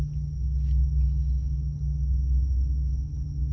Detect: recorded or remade recorded